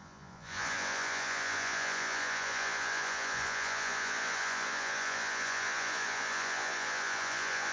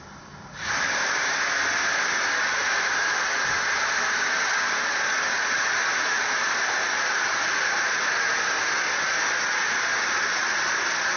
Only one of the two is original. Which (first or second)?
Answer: second